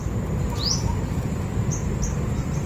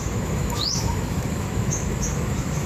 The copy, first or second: second